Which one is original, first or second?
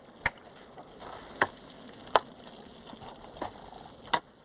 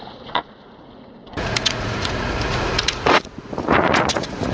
first